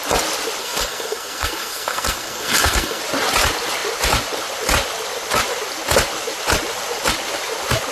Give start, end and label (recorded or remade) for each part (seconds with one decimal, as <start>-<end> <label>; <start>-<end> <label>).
0.0-0.6 recorded; 0.6-3.0 remade; 3.0-7.9 recorded

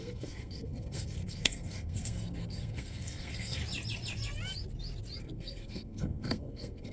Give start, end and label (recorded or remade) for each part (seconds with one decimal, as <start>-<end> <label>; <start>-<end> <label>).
0.0-3.6 remade; 3.6-5.2 recorded; 5.2-6.9 remade